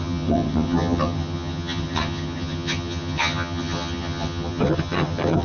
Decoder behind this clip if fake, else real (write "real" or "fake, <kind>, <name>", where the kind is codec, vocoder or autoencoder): fake, vocoder, HiFi-GAN